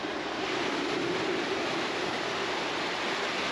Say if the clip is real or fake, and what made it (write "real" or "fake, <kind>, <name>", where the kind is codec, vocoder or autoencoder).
fake, vocoder, BigVGAN v2